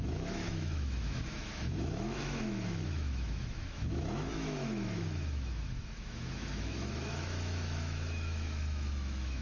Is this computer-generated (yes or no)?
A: yes